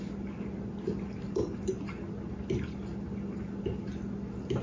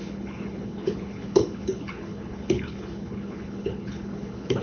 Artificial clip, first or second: second